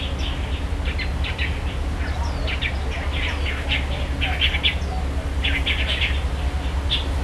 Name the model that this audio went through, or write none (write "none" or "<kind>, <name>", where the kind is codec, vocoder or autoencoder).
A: none